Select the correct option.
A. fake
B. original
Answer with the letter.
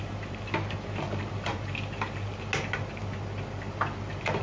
B